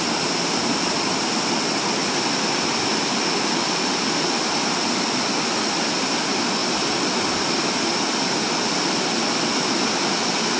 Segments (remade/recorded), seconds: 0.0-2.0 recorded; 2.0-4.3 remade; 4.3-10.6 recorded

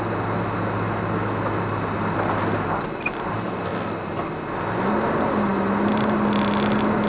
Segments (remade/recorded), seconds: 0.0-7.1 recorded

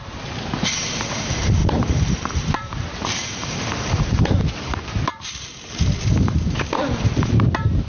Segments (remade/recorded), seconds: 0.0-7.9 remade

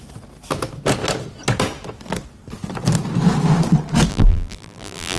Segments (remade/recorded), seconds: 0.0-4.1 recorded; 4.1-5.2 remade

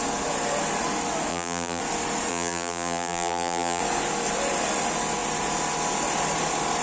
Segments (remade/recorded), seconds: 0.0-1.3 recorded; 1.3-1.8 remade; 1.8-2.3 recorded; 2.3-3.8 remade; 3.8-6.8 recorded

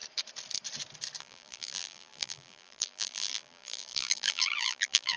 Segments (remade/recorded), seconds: 0.0-1.2 recorded; 1.2-5.2 remade

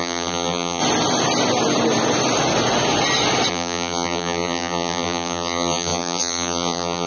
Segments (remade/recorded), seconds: 0.0-0.8 remade; 0.8-3.5 recorded; 3.5-7.1 remade

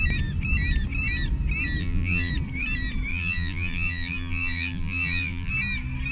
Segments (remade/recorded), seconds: 0.0-1.8 recorded; 1.8-2.3 remade; 2.3-3.1 recorded; 3.1-5.5 remade; 5.5-6.1 recorded